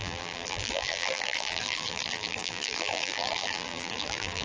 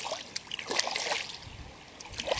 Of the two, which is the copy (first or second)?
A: first